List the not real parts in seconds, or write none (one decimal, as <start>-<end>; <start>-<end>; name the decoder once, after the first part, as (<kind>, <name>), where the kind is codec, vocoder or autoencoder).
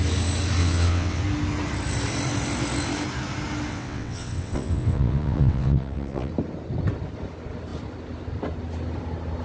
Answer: 0.6-1.2 (vocoder, WaveNeXt); 3.7-6.3